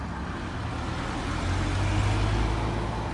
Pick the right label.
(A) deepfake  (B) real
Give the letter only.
B